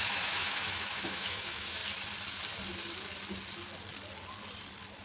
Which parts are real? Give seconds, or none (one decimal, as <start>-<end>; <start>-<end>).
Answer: 1.8-5.0